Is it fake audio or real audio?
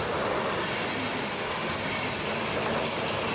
real